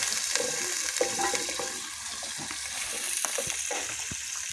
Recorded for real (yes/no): no